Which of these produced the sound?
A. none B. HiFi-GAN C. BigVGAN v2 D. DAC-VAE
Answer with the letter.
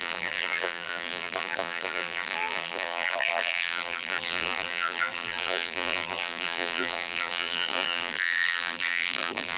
C